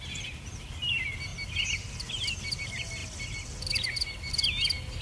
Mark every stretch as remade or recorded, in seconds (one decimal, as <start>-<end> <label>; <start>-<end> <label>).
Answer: 0.0-5.0 recorded